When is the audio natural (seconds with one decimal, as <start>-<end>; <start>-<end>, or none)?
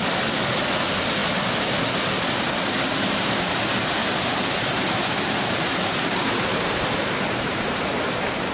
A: 0.0-4.0; 7.8-8.5